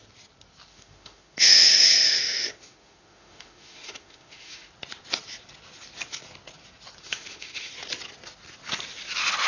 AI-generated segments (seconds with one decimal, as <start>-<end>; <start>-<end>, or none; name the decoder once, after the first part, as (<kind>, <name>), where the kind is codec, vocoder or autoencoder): 0.7-4.7 (autoencoder, DAC-VAE); 7.0-7.7

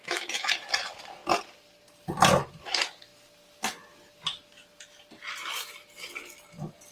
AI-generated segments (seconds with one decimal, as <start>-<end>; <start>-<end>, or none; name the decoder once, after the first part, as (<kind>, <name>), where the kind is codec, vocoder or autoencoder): 0.0-0.5 (autoencoder, DAC-VAE)

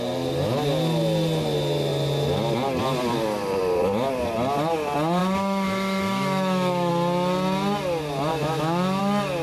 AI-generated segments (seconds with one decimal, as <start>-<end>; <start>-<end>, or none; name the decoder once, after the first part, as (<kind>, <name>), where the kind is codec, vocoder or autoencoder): 5.2-6.9 (autoencoder, DAC-VAE); 8.3-9.0